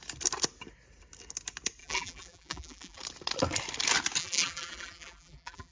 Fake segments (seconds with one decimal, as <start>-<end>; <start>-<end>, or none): 1.8-3.0; 4.2-5.7